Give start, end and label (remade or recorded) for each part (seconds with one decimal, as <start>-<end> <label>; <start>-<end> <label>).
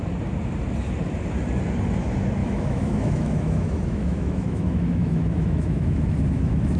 0.0-2.4 recorded; 2.4-6.8 remade